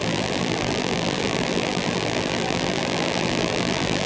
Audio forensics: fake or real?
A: fake